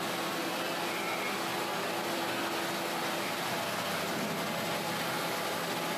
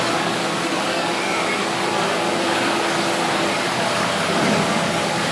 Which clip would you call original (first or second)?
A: first